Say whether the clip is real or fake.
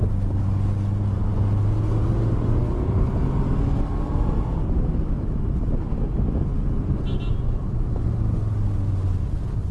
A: real